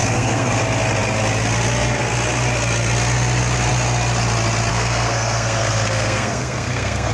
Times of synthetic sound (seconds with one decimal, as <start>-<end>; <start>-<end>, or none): 0.0-0.5; 4.7-7.1